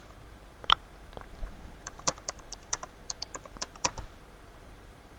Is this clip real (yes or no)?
no